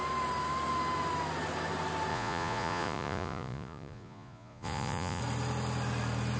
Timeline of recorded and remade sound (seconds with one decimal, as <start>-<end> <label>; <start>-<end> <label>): 0.0-2.1 recorded; 2.1-5.2 remade; 5.2-6.4 recorded